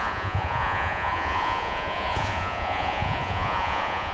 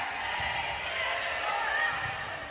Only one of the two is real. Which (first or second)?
second